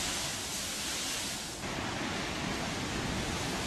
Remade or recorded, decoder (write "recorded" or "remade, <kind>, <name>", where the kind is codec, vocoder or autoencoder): recorded